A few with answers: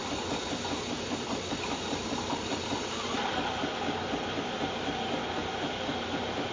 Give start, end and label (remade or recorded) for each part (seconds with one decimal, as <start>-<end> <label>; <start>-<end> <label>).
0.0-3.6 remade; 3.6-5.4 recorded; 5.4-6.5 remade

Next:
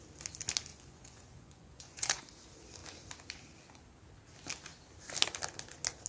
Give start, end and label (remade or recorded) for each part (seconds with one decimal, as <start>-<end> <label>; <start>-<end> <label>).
0.0-0.7 recorded; 0.7-2.2 remade; 2.2-6.1 recorded

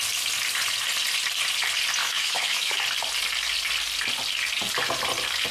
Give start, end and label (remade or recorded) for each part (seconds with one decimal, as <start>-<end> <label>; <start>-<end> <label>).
0.0-2.0 recorded; 2.0-2.8 remade; 2.8-5.5 recorded

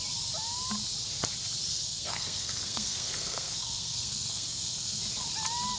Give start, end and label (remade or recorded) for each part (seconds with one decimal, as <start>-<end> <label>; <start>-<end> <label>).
0.0-1.7 recorded; 1.7-5.0 remade; 5.0-5.8 recorded